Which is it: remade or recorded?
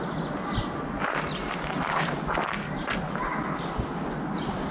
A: recorded